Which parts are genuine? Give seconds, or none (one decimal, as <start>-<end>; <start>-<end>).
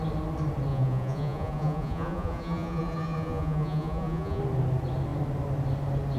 0.0-0.7; 4.4-6.2